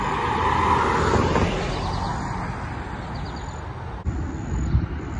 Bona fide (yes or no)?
yes